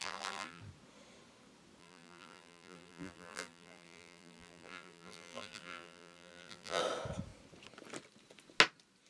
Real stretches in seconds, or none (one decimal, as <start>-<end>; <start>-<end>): 0.6-1.8; 6.8-9.1